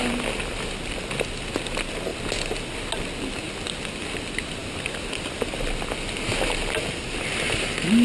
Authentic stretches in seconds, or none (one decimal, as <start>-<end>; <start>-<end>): 0.0-8.0